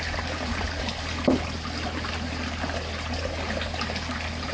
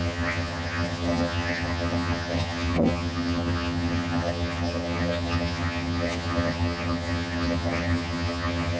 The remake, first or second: second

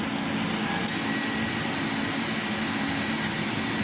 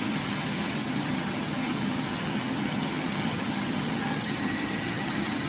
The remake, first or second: second